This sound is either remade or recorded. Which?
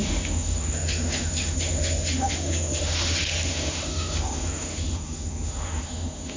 remade